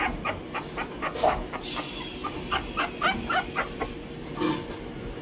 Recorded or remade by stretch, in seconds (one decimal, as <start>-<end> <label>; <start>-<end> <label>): 0.0-5.2 recorded